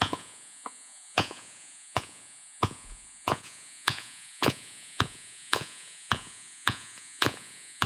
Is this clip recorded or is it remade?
remade